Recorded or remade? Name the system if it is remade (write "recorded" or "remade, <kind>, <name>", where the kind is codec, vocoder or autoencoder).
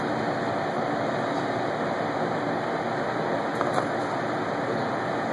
recorded